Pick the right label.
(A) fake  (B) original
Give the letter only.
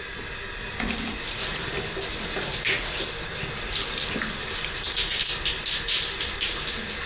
B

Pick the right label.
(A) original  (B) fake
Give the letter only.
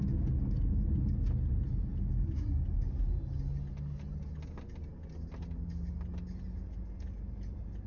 A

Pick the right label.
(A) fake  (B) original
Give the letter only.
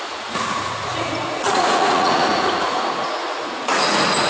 A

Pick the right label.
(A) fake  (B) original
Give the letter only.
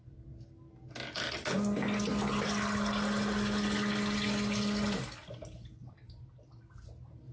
B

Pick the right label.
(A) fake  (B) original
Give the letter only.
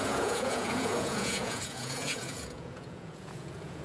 A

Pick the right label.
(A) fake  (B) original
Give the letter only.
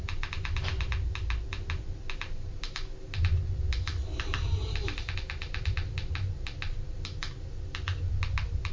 B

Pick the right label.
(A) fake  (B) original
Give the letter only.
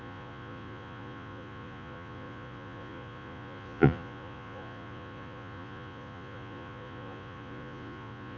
A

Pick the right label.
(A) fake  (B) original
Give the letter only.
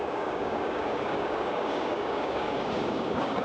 A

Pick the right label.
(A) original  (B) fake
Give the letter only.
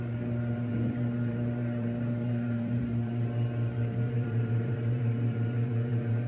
B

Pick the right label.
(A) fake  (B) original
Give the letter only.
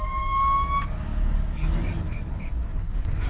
A